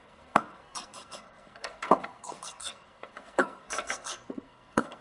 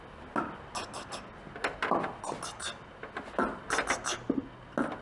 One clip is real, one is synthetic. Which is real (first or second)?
second